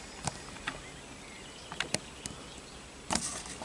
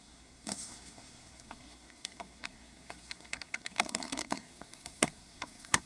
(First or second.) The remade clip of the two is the second